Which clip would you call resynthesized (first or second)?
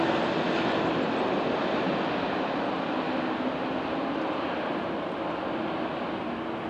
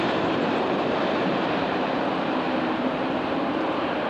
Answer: second